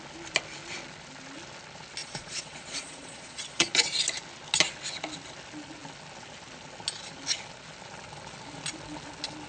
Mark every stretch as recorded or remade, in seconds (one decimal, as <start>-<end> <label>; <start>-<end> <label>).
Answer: 0.0-2.0 recorded; 2.0-3.7 remade; 3.7-9.5 recorded